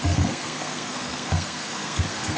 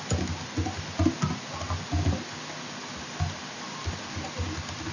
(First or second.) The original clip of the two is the second